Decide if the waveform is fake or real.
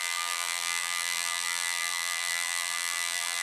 fake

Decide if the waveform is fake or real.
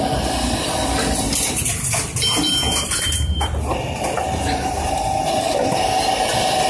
fake